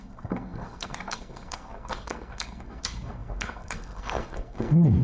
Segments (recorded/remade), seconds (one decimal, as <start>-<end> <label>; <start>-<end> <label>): 0.0-5.0 remade